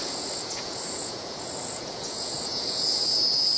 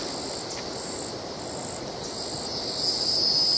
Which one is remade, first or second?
first